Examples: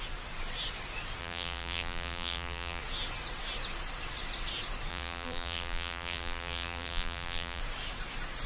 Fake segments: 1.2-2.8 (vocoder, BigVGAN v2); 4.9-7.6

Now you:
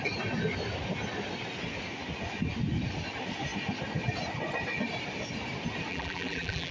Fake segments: 5.9-6.7 (vocoder, BigVGAN v2)

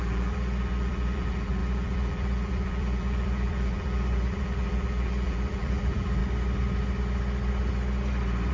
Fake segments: 0.0-6.2 (vocoder, BigVGAN v2)

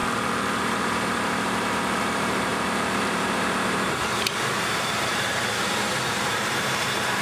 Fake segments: 0.6-7.2 (vocoder, BigVGAN v2)

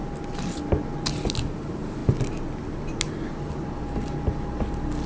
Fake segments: 1.6-2.0 (vocoder, BigVGAN v2)

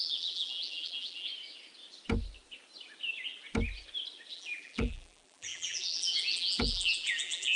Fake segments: 0.0-1.3 (vocoder, BigVGAN v2); 4.3-7.6

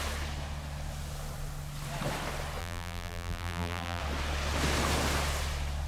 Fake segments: 2.6-4.0 (vocoder, BigVGAN v2)

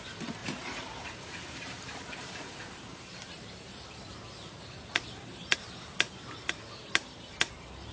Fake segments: 0.4-4.3 (vocoder, BigVGAN v2)